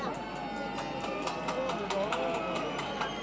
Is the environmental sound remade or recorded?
recorded